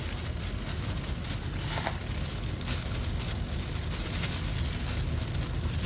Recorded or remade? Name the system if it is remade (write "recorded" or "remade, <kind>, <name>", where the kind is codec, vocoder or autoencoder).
recorded